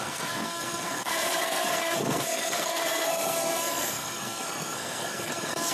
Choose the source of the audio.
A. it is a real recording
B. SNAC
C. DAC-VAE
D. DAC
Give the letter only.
B